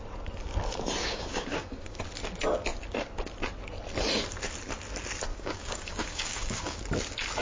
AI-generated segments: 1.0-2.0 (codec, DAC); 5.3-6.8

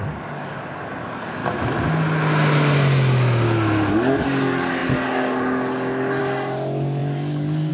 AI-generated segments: 0.0-1.4 (codec, DAC); 3.9-7.7

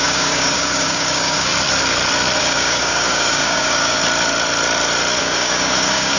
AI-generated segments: 0.0-1.5 (codec, DAC); 2.4-4.0; 5.2-6.2

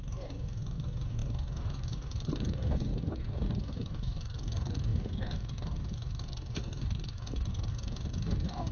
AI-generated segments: 0.0-8.7 (codec, DAC)

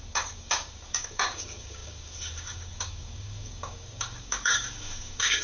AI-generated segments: 0.0-5.4 (codec, DAC)

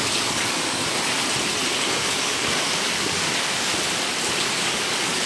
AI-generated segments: 0.0-0.8 (codec, DAC); 1.9-3.7; 4.6-5.3